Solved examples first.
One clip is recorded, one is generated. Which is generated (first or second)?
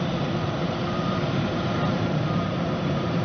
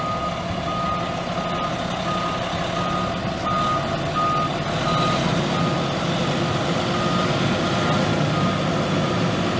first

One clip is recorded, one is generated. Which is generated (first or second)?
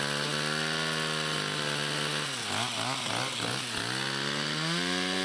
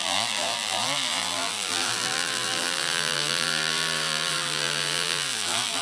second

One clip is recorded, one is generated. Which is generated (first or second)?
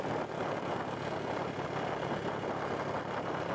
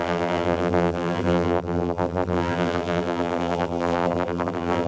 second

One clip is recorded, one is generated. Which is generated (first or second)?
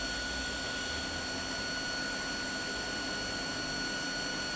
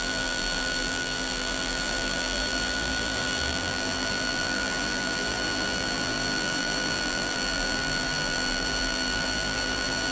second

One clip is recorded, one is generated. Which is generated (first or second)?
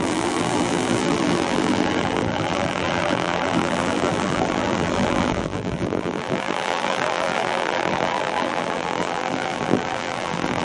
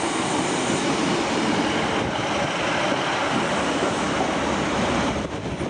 first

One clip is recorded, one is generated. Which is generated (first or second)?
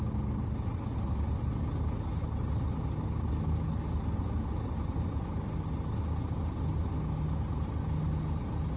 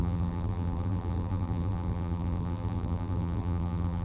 second